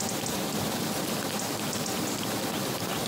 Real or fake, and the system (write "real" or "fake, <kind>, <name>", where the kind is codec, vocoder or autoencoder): real